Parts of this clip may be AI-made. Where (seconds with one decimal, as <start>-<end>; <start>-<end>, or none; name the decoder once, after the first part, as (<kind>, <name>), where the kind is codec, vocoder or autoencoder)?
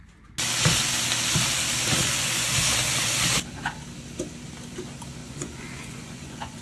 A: 2.0-2.5 (vocoder, Vocos); 5.2-6.6